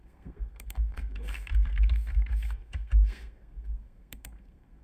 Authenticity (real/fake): fake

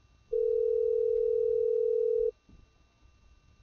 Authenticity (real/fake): real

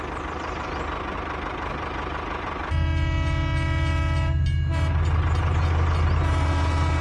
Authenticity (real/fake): real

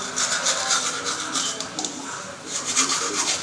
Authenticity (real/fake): real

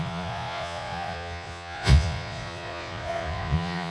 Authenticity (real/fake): fake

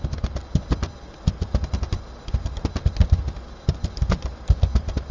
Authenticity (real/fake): real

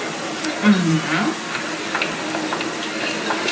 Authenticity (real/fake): real